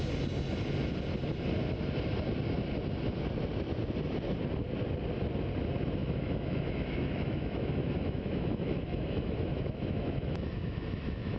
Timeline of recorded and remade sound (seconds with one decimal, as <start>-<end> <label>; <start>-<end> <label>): 0.0-6.0 recorded; 6.0-11.4 remade